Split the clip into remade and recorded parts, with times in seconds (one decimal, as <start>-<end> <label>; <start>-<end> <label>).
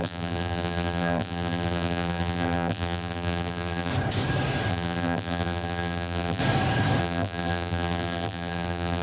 0.0-3.9 remade; 3.9-4.7 recorded; 4.7-6.4 remade; 6.4-7.0 recorded; 7.0-9.0 remade